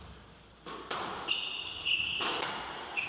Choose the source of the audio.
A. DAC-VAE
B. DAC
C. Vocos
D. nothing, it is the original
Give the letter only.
D